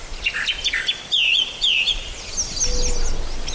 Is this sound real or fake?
real